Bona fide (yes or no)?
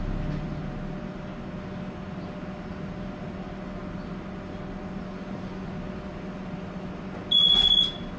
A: yes